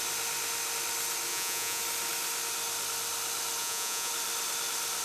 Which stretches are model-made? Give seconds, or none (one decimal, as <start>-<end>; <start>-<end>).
1.3-1.8; 3.6-4.1